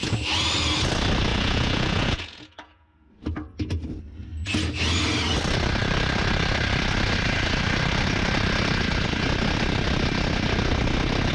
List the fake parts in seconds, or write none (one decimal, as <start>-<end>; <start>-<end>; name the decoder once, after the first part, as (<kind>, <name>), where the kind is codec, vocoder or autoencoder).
1.3-3.1 (vocoder, Vocos)